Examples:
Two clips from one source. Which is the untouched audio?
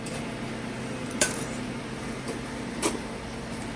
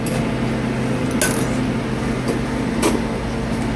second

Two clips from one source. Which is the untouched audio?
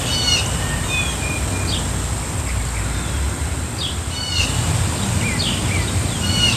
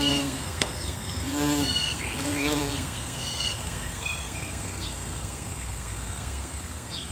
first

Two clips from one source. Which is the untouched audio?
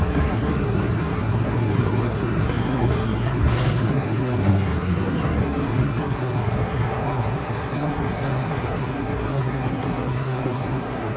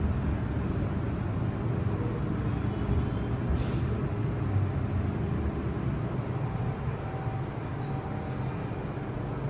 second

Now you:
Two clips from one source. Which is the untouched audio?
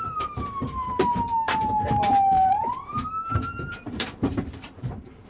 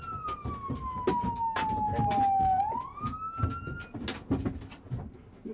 second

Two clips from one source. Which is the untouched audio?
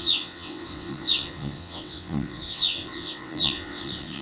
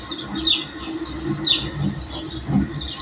second